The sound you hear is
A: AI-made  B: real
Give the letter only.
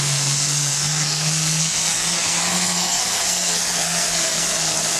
A